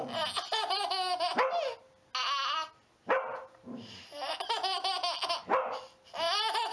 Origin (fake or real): real